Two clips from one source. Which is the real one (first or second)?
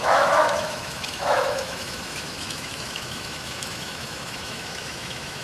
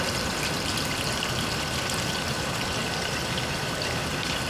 second